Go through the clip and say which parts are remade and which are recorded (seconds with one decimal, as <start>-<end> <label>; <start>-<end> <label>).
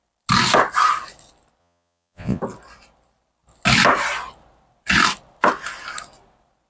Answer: 0.0-1.6 recorded; 1.6-2.4 remade; 2.4-6.7 recorded